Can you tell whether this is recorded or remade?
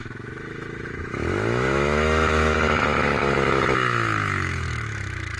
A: remade